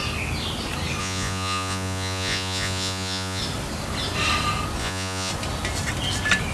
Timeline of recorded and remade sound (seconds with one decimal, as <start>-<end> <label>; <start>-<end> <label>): 0.0-1.0 recorded; 1.0-3.4 remade; 3.4-4.8 recorded; 4.8-5.3 remade; 5.3-6.5 recorded